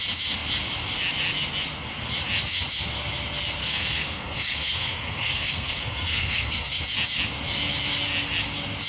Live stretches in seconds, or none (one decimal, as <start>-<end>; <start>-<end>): 0.0-3.6; 6.8-8.9